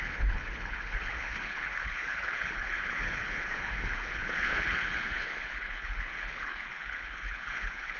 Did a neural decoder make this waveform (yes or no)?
yes